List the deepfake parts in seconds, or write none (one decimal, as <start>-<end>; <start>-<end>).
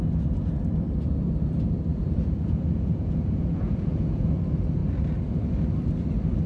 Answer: 1.9-4.3